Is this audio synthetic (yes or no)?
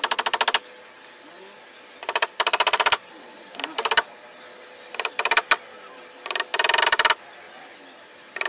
no